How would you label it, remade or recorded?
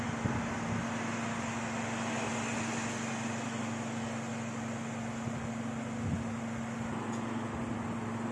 recorded